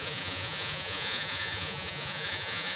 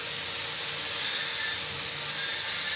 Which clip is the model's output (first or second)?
first